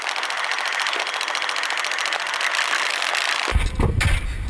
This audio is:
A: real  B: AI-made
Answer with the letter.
A